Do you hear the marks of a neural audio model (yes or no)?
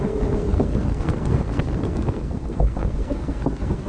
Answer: yes